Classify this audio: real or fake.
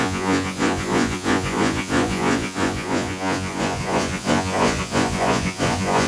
fake